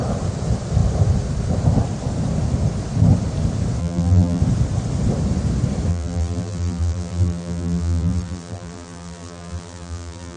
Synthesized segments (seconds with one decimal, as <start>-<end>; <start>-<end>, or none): 3.8-4.4; 5.9-10.4